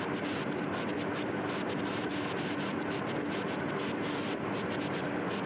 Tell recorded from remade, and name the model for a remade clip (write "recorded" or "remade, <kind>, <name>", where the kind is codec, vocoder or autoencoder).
recorded